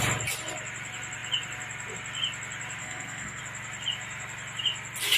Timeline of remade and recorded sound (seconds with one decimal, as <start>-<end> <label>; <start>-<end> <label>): 0.0-2.8 recorded; 2.8-3.4 remade; 3.4-5.2 recorded